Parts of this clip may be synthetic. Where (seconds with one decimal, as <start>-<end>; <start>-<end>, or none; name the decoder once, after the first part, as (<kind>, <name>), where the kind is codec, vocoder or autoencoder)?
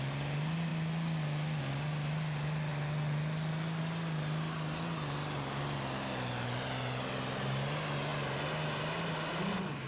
none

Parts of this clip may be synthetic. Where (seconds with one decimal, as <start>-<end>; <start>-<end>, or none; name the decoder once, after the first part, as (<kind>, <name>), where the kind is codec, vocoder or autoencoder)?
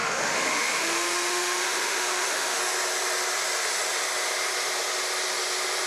0.0-2.6 (autoencoder, DAC-VAE)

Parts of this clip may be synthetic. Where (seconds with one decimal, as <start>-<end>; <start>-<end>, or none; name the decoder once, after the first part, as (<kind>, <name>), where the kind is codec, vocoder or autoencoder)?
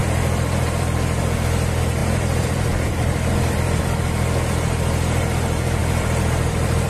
0.0-1.2 (vocoder, BigVGAN v2); 2.0-3.8; 5.8-6.9